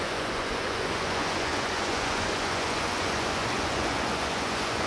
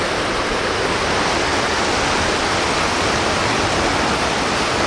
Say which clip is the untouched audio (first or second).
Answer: second